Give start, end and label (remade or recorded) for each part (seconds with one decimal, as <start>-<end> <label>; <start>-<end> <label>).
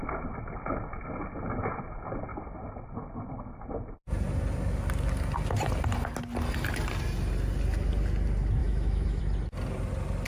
0.0-8.6 recorded; 8.6-9.2 remade; 9.2-10.3 recorded